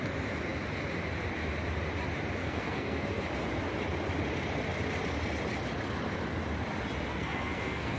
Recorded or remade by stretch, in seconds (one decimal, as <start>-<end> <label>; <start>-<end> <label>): 0.0-2.4 recorded; 2.4-3.2 remade; 3.2-7.1 recorded; 7.1-8.0 remade